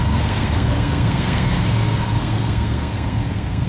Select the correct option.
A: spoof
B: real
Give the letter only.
A